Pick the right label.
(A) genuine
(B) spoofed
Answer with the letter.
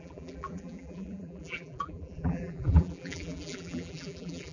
B